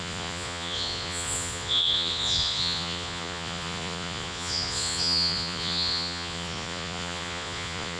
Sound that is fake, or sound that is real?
fake